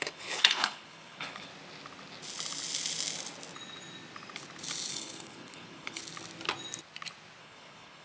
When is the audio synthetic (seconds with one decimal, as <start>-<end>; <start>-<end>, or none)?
0.0-1.5; 4.9-6.0; 7.4-8.0